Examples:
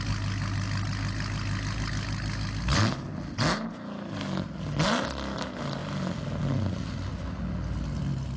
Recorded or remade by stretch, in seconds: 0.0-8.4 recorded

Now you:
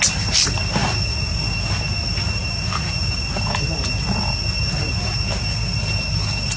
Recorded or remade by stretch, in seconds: 0.0-6.6 recorded